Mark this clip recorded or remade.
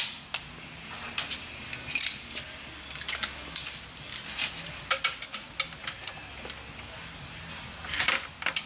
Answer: recorded